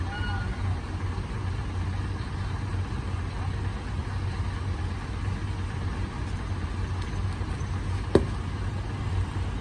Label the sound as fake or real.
real